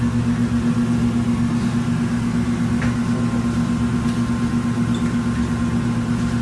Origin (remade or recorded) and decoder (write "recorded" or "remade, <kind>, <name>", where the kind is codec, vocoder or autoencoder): recorded